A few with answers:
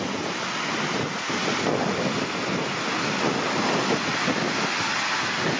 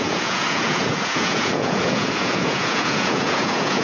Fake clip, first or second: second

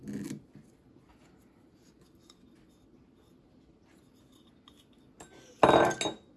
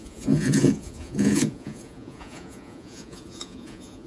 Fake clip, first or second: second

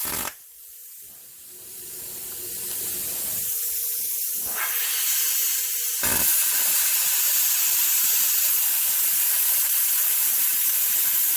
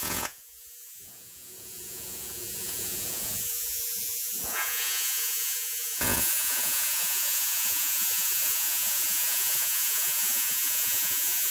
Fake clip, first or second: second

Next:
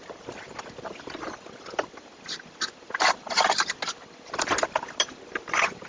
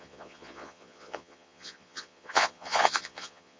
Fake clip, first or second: second